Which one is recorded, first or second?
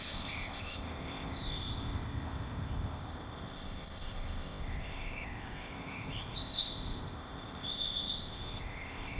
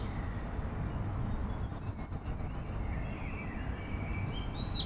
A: second